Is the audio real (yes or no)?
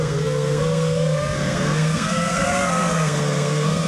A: no